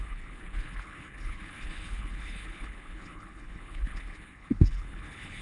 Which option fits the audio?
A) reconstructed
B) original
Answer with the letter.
A